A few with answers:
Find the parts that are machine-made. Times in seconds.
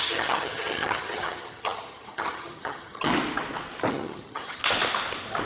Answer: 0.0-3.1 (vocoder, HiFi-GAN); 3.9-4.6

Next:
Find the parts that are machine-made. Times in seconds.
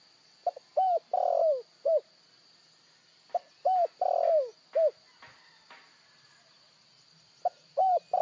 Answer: none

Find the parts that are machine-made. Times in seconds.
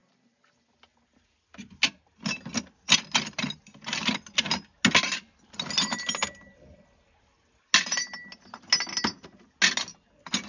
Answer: none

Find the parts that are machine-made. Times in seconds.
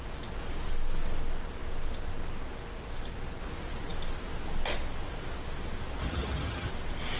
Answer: 6.0-6.7 (vocoder, HiFi-GAN)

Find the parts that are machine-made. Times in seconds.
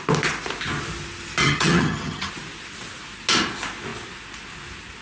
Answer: 1.4-2.3 (vocoder, HiFi-GAN)